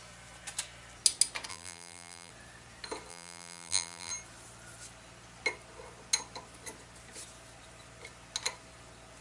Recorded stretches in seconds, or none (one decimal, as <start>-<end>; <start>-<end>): 0.0-1.5; 2.3-3.1; 4.1-9.2